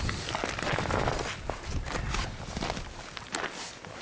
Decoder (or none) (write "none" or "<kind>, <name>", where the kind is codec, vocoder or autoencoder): none